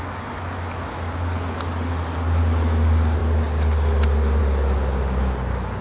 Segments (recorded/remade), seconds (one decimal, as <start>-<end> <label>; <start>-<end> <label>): 0.0-5.8 recorded